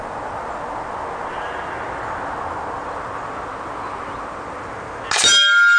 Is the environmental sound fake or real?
real